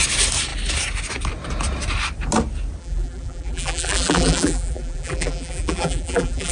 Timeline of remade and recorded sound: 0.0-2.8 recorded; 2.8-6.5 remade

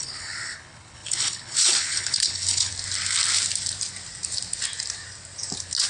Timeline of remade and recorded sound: 0.0-2.7 remade; 2.7-5.9 recorded

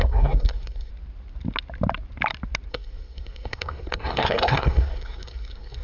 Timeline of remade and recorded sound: 0.0-0.9 remade; 0.9-2.7 recorded; 2.7-5.8 remade

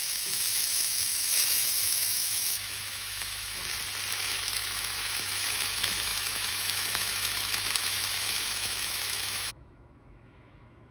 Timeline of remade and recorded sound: 0.0-3.6 remade; 3.6-4.1 recorded; 4.1-10.9 remade